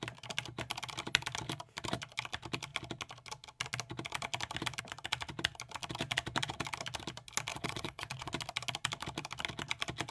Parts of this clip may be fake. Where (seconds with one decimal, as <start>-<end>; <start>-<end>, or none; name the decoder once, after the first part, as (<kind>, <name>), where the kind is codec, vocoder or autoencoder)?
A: 7.5-8.3 (vocoder, WaveNeXt)